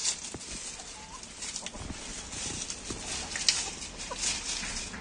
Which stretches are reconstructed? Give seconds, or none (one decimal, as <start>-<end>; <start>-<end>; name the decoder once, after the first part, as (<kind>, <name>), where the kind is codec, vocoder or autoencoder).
none